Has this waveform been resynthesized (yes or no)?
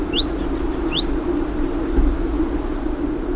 no